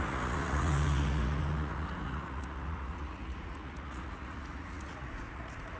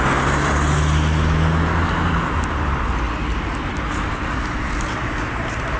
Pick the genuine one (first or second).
second